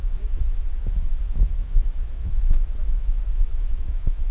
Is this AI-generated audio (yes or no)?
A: yes